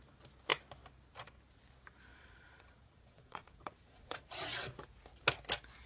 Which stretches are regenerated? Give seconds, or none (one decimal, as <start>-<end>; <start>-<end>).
2.1-4.2